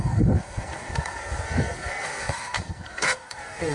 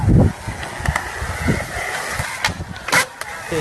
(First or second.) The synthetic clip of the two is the first